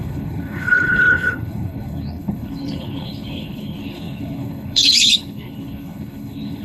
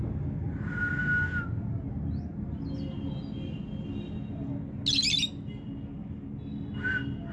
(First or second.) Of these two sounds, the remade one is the first